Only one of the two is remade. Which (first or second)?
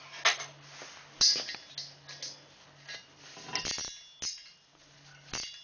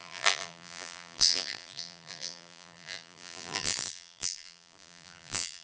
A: second